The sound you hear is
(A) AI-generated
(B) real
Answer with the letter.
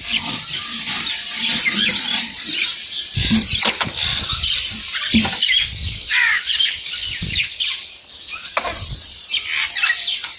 B